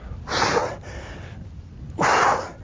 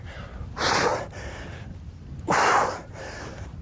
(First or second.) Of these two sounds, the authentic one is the first